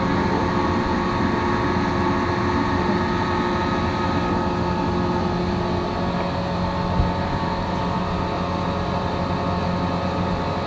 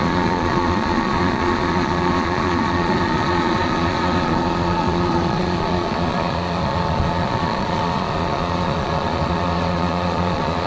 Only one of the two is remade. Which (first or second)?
second